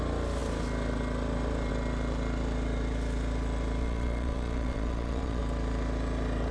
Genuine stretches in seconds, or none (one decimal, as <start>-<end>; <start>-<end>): 0.0-3.8; 5.4-6.5